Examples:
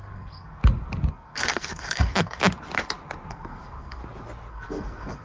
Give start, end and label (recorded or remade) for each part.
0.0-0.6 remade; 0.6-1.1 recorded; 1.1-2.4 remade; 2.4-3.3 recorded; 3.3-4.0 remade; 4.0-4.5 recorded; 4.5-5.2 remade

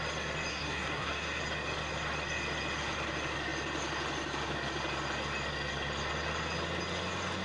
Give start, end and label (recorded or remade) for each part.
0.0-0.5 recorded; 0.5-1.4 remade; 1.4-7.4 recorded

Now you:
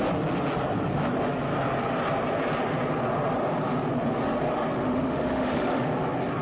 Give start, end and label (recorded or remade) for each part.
0.0-4.9 recorded; 4.9-5.9 remade; 5.9-6.4 recorded

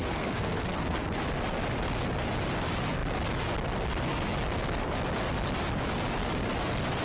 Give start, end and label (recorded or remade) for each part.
0.0-1.1 remade; 1.1-7.0 recorded

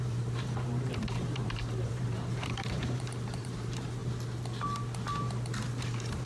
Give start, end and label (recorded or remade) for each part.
0.0-4.0 remade; 4.0-5.8 recorded; 5.8-6.3 remade

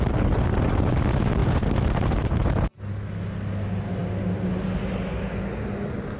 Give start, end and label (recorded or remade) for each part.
0.0-1.4 recorded; 1.4-2.7 remade; 2.7-6.2 recorded

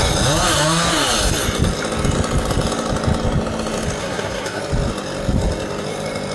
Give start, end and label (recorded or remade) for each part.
0.0-4.0 recorded; 4.0-4.6 remade; 4.6-6.3 recorded

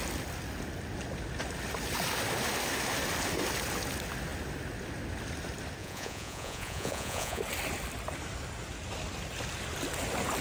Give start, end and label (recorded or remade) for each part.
0.0-5.8 recorded; 5.8-7.4 remade; 7.4-10.4 recorded